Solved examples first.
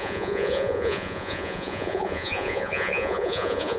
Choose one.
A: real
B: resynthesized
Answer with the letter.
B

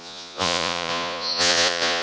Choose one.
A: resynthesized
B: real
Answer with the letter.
A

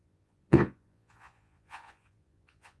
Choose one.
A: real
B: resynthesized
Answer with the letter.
B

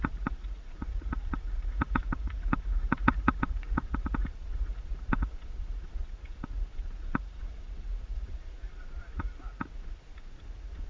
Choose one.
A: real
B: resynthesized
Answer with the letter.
B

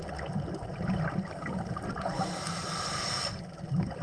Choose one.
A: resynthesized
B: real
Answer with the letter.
B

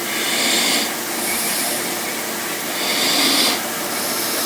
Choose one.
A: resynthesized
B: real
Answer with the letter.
B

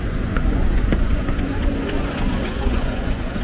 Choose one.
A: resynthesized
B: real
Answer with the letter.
A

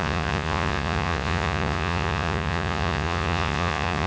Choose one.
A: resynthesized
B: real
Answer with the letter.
A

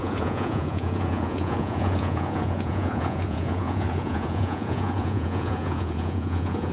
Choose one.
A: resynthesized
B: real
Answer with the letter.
A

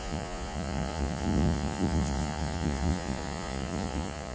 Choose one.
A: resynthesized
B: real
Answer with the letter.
A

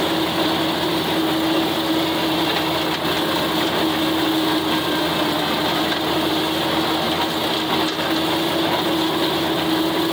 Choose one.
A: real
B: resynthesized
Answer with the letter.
A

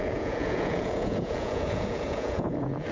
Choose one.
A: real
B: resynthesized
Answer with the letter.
B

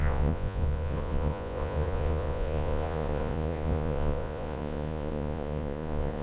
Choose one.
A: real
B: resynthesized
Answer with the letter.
B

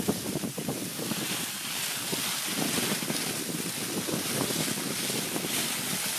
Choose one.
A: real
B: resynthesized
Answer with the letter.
A